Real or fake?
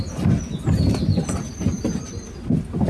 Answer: real